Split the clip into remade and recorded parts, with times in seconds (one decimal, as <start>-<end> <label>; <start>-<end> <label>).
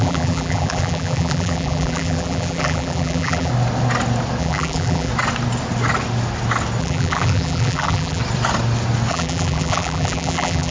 0.0-3.5 remade; 3.5-4.4 recorded; 4.4-5.1 remade; 5.1-6.8 recorded; 6.8-8.2 remade; 8.2-9.1 recorded; 9.1-10.7 remade